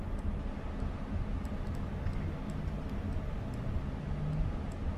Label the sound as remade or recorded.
recorded